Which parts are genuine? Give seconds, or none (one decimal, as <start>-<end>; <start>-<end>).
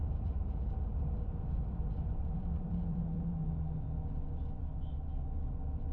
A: 3.5-5.9